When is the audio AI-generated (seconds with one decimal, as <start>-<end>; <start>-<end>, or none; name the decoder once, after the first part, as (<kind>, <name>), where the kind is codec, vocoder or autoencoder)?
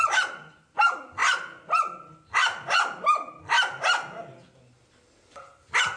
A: none